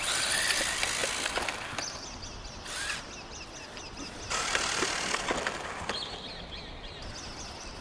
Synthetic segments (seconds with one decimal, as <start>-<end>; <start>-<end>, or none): none

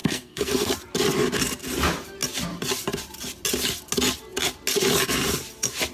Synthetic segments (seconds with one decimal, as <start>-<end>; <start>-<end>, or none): 0.0-0.7